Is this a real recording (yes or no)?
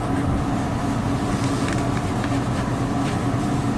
yes